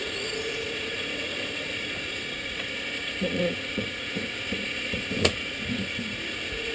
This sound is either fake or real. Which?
fake